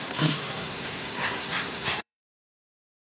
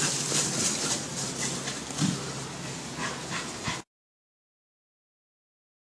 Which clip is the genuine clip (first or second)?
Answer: second